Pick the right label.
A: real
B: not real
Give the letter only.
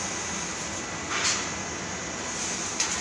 A